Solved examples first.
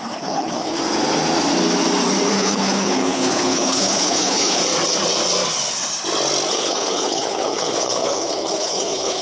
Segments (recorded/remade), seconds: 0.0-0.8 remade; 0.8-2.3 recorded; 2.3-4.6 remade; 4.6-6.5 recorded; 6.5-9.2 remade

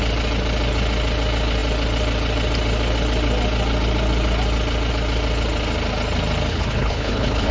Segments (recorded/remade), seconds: 0.0-6.5 recorded; 6.5-7.5 remade

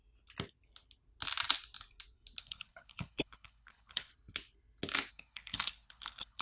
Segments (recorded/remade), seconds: 0.0-2.4 recorded; 2.4-4.1 remade; 4.1-5.1 recorded; 5.1-6.4 remade

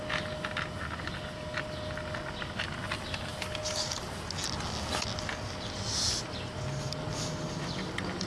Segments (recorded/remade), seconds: 0.0-8.3 recorded